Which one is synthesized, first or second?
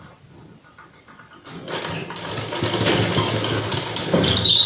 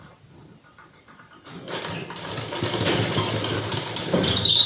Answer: second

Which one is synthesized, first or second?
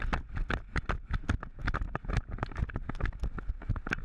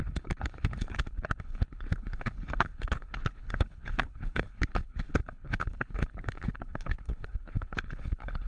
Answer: second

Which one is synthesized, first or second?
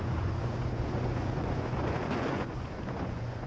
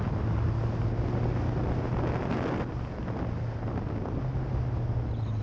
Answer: first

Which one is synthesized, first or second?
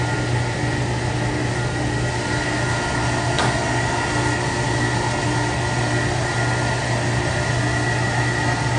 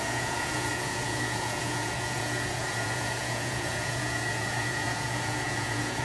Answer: second